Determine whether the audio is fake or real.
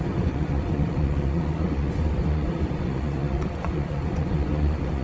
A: fake